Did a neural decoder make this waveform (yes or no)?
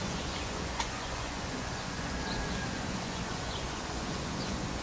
yes